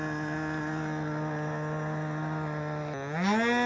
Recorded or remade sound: recorded